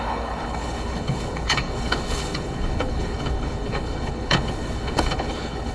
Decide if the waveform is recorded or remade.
remade